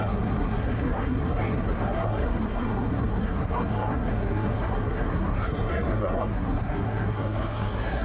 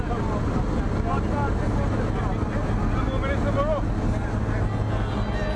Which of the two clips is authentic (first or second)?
second